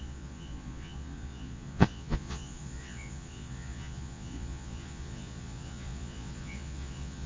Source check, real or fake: fake